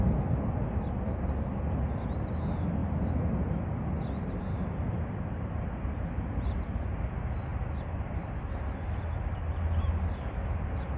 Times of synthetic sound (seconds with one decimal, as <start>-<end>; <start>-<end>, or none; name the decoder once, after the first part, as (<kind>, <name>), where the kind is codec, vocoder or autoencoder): none